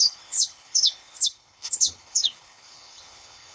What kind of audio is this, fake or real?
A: fake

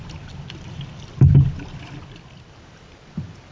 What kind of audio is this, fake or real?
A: real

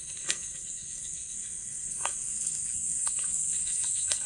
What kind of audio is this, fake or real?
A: fake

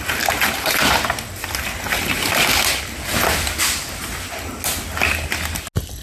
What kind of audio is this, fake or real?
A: real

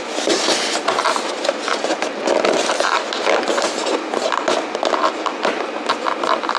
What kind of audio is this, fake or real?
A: real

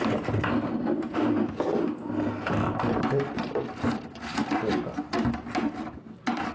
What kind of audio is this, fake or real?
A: real